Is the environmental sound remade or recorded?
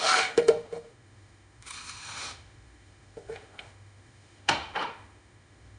remade